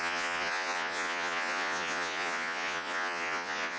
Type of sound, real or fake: fake